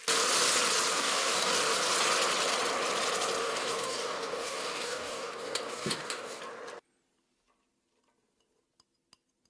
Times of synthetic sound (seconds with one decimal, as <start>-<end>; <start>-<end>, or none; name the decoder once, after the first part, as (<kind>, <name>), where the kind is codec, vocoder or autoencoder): 0.9-1.6 (codec, DAC); 3.4-6.4